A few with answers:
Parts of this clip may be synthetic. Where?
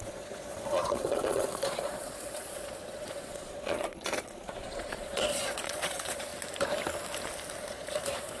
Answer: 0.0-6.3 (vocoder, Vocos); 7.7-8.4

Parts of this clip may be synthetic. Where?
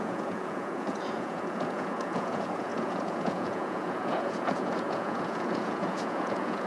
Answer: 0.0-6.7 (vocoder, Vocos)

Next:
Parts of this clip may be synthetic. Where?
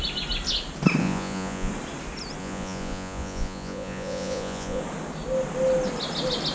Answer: 1.0-1.7 (vocoder, Vocos); 2.4-4.8